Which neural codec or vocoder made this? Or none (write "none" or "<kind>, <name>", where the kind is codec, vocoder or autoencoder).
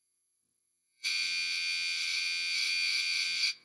vocoder, WaveNeXt